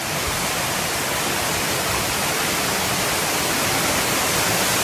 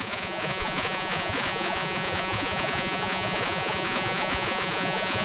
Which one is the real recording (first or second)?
first